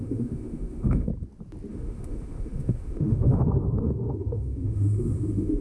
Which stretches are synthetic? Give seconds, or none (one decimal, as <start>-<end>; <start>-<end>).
0.0-1.1; 1.7-5.6